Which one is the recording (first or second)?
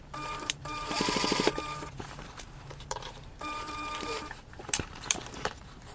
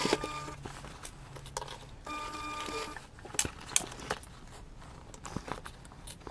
second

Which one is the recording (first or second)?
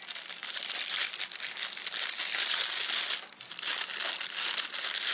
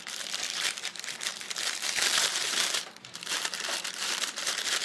first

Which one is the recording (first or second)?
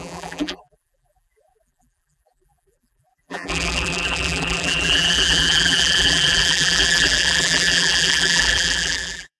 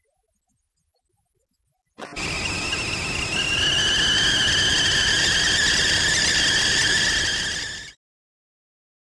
second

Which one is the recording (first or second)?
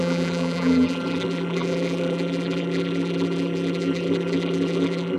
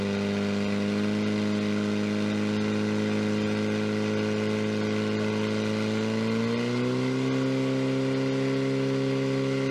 second